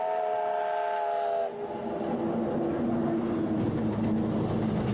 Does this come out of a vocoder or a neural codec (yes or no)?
no